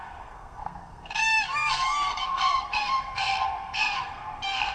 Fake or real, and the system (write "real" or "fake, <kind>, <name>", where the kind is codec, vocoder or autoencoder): fake, codec, SNAC